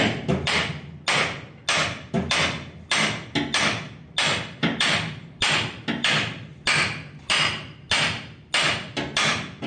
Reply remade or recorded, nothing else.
recorded